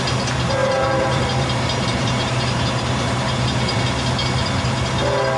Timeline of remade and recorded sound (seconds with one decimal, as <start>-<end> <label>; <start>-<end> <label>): 0.0-0.6 recorded; 0.6-3.8 remade; 3.8-5.4 recorded